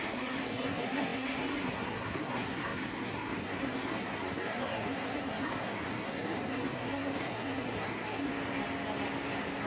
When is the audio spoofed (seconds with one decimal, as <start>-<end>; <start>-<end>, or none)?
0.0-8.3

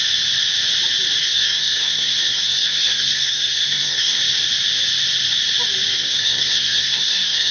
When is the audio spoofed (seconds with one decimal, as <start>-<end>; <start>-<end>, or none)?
1.2-4.2; 5.9-7.5

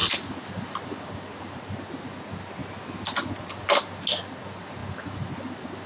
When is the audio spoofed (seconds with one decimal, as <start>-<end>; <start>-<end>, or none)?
none

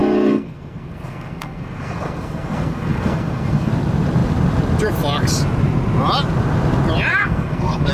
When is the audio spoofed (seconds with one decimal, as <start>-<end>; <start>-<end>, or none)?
0.0-3.7; 7.1-7.9